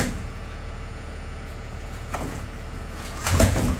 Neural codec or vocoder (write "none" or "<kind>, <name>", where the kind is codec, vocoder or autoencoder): vocoder, Vocos